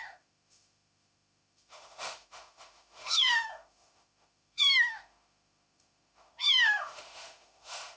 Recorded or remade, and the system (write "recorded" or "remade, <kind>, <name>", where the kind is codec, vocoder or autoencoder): remade, autoencoder, DAC-VAE